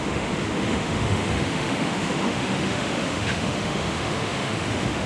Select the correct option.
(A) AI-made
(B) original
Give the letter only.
A